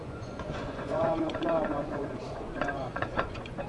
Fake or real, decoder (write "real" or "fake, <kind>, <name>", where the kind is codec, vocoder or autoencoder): fake, vocoder, Vocos